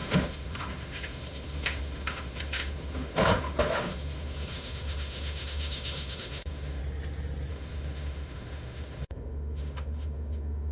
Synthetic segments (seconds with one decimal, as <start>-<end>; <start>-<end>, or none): 0.0-6.8; 7.5-10.7